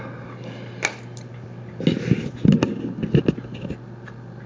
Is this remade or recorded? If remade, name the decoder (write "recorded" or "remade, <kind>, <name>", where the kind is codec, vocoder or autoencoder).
recorded